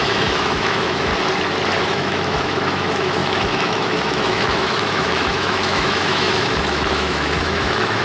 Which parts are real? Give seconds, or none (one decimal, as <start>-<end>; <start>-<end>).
1.1-1.8